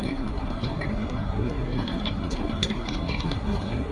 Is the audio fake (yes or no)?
yes